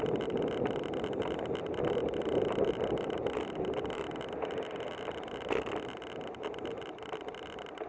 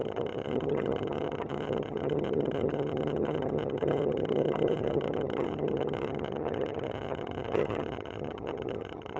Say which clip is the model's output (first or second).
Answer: second